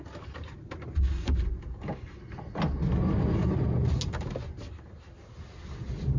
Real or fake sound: real